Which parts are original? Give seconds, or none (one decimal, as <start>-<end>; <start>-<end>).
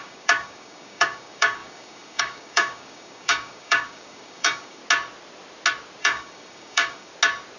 4.8-6.0; 7.1-7.6